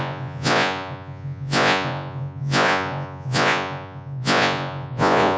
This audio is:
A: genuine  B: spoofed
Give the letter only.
B